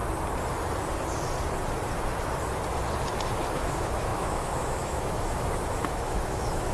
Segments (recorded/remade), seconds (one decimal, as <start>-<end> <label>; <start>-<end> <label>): 0.0-3.6 recorded; 3.6-6.7 remade

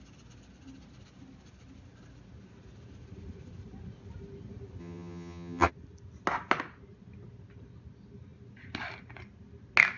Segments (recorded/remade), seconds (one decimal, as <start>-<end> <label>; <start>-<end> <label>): 0.0-4.8 recorded; 4.8-5.7 remade; 5.7-10.0 recorded

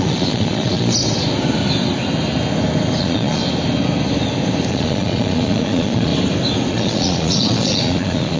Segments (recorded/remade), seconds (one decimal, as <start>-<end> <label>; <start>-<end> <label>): 0.0-1.0 remade; 1.0-3.0 recorded; 3.0-3.4 remade; 3.4-4.7 recorded; 4.7-6.1 remade; 6.1-6.7 recorded; 6.7-8.4 remade

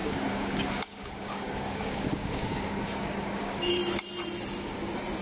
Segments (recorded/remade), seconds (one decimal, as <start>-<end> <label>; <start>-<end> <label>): 0.0-3.8 remade; 3.8-5.2 recorded

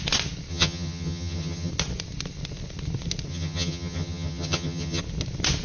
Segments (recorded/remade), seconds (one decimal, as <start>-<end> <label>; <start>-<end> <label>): 0.0-0.5 recorded; 0.5-1.7 remade; 1.7-3.3 recorded; 3.3-5.0 remade; 5.0-5.6 recorded

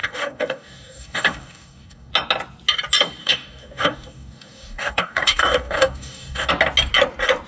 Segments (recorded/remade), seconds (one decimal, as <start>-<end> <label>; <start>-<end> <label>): 0.0-2.1 remade; 2.1-3.2 recorded; 3.2-6.5 remade; 6.5-7.5 recorded